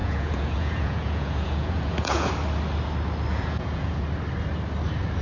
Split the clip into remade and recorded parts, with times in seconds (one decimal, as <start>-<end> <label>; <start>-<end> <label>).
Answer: 0.0-2.3 remade; 2.3-3.3 recorded; 3.3-4.0 remade; 4.0-5.2 recorded